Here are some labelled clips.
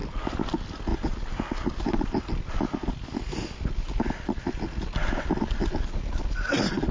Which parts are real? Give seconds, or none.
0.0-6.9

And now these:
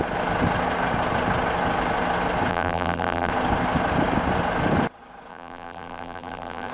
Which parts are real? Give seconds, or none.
0.0-2.5; 3.3-5.3